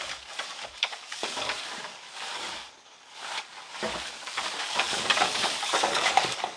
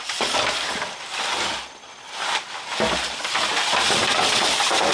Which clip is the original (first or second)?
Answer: second